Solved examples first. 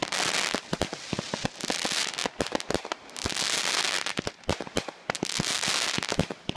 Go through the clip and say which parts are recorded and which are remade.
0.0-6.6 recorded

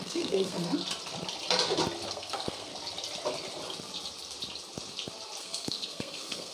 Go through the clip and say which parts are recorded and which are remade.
0.0-0.8 remade; 0.8-2.1 recorded; 2.1-2.7 remade; 2.7-5.4 recorded; 5.4-6.5 remade

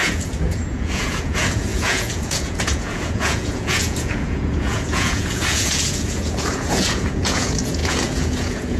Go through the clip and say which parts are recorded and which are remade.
0.0-8.8 remade

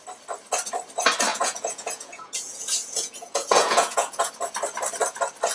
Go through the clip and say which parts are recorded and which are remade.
0.0-1.3 recorded; 1.3-4.3 remade; 4.3-5.5 recorded